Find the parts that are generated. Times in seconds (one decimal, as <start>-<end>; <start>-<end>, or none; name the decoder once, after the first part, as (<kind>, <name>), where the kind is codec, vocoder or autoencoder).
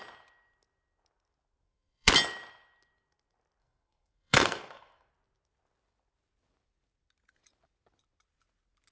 1.6-2.1 (codec, SNAC); 3.6-5.1